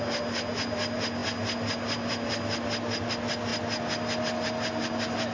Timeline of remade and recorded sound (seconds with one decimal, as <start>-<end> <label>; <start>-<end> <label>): 0.0-5.3 recorded